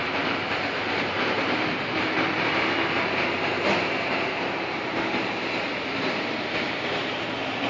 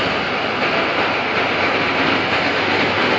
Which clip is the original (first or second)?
second